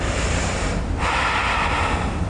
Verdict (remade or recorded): recorded